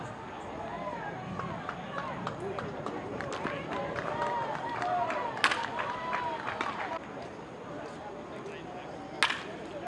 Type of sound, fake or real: real